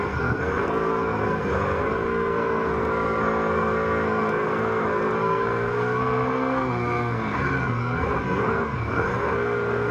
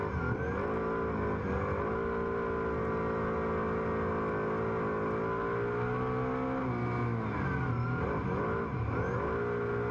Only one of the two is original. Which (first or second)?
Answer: second